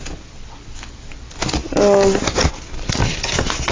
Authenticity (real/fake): real